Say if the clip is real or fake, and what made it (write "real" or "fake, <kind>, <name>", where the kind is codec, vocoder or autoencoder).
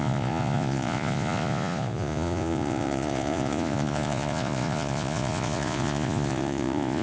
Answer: fake, vocoder, Vocos